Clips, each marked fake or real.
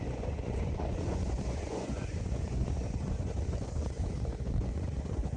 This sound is fake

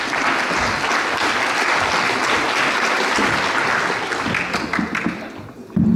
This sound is real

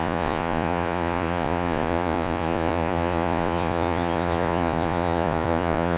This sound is fake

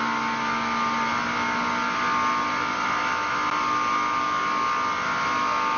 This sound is real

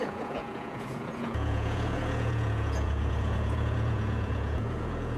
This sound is fake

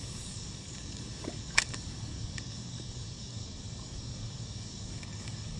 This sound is fake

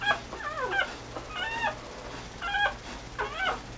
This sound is real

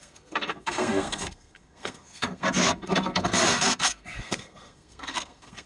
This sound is fake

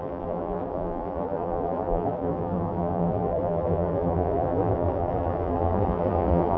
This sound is fake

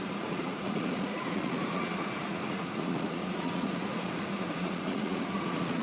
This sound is fake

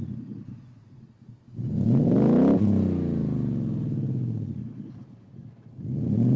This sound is real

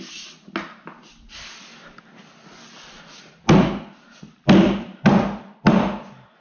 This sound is real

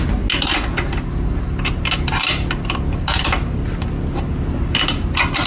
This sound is real